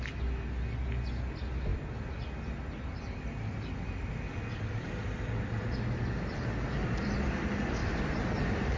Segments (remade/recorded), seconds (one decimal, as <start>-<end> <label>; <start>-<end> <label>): 0.0-8.8 recorded